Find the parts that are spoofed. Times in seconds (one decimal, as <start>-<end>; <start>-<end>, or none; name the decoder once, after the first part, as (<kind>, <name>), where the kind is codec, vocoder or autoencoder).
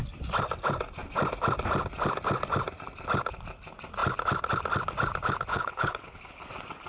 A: 5.5-6.5 (codec, HILCodec)